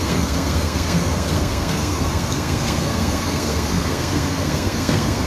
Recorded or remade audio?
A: remade